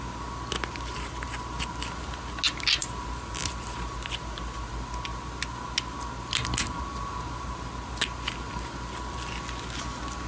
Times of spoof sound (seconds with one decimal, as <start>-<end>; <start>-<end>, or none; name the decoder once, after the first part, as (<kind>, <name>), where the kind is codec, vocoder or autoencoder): none

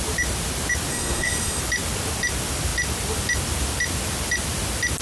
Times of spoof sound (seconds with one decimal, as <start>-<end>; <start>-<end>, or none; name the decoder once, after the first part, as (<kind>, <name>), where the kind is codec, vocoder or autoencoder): 0.9-1.6 (codec, SNAC)

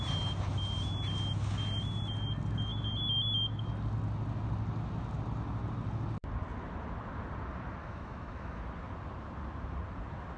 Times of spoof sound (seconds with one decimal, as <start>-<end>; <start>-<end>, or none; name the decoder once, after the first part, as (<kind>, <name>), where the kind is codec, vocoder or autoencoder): 7.8-8.6 (autoencoder, DAC-VAE)

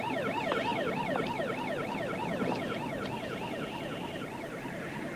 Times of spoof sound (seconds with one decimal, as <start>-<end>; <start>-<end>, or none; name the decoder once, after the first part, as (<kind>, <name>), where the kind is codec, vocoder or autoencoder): none

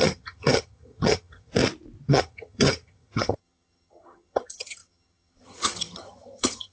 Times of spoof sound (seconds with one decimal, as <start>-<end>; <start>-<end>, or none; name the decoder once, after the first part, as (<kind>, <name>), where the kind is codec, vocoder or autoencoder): 0.0-1.5 (vocoder, HiFi-GAN); 2.1-6.7

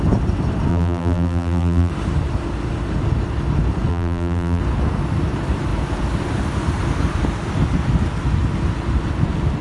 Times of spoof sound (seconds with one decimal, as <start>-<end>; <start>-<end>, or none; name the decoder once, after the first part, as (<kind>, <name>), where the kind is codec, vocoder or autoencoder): 0.7-1.9 (vocoder, BigVGAN v2); 3.9-4.6